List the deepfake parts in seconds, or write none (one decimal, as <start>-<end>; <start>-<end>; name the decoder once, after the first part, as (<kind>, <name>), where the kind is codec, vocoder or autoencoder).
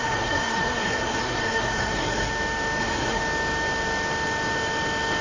0.0-2.3 (codec, SNAC); 2.8-3.2